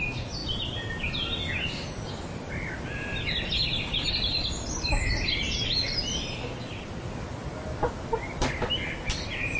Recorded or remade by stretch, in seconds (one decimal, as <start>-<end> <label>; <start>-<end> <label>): 0.0-9.6 recorded